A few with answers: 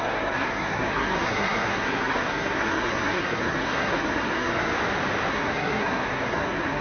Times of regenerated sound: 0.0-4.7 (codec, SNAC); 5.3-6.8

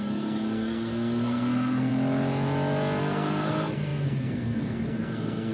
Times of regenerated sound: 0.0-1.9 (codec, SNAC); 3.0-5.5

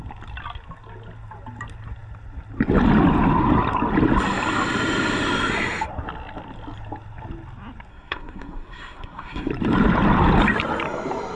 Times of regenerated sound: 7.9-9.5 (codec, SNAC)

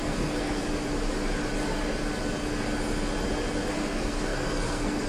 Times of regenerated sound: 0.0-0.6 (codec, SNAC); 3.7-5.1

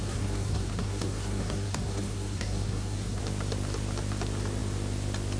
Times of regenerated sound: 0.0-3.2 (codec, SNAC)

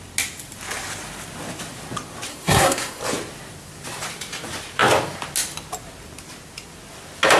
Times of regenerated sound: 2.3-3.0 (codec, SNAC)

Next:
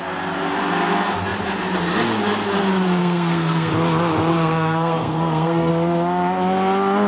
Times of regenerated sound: 3.0-3.7 (codec, SNAC); 4.3-5.7